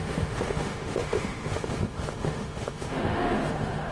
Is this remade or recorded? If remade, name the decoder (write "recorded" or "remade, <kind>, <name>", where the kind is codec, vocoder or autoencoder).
remade, autoencoder, DAC-VAE